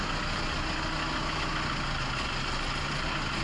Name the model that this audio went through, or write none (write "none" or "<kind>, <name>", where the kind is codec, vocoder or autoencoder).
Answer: none